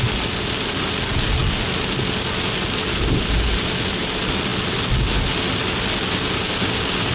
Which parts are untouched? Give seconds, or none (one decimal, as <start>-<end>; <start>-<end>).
0.0-7.1

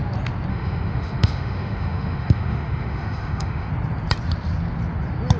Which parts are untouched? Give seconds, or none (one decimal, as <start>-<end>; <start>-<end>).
0.0-0.5; 3.7-5.4

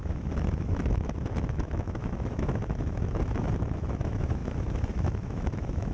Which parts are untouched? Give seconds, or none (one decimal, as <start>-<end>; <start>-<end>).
none

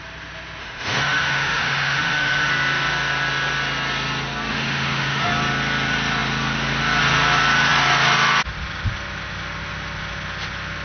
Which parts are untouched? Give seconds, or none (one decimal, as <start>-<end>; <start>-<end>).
0.0-0.6; 2.5-4.5; 5.3-10.8

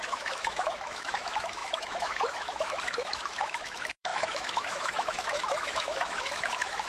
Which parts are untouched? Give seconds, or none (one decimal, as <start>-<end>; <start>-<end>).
none

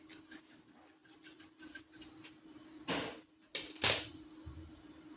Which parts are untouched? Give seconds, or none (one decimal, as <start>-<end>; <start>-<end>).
0.0-5.2